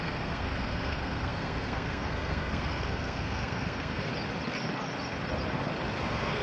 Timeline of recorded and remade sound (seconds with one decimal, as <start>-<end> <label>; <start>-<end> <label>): 0.0-4.1 remade; 4.1-6.0 recorded; 6.0-6.4 remade